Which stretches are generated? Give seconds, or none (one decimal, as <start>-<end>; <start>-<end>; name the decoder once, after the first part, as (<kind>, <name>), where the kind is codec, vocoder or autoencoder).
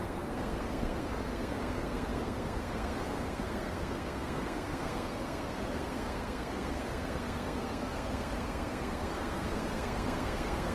0.0-10.7 (codec, SNAC)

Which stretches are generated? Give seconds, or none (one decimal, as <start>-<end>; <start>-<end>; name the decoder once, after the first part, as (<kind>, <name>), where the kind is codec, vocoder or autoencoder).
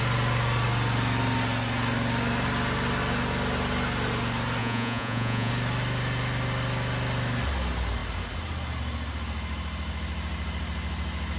4.6-5.5 (vocoder, Vocos)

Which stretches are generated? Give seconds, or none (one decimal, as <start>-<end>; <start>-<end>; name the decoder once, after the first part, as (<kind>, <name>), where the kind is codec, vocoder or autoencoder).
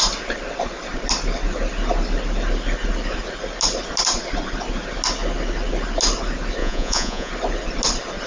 6.6-7.3 (vocoder, Vocos)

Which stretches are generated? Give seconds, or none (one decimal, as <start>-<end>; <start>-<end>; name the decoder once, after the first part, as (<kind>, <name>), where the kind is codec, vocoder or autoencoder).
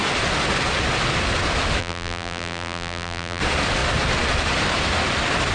1.8-3.4 (vocoder, BigVGAN v2)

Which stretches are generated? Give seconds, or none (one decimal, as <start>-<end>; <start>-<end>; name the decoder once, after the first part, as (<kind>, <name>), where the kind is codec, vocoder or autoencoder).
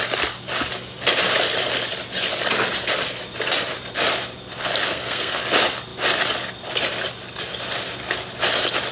4.9-5.4 (codec, SNAC)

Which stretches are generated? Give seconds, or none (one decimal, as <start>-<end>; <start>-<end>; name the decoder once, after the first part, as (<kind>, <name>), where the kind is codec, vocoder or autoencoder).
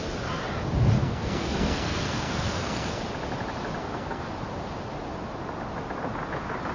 1.0-3.0 (codec, SNAC); 3.8-4.3